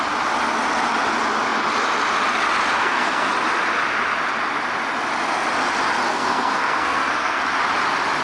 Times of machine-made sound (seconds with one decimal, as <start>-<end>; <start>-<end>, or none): 2.8-3.3; 6.1-7.4